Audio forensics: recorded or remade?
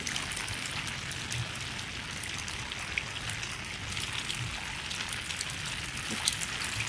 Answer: recorded